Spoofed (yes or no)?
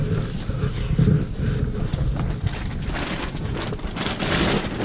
no